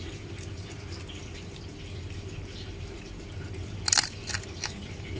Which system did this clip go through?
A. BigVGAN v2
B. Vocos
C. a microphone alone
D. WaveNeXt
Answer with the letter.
C